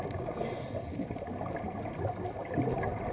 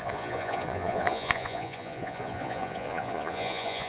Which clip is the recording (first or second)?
first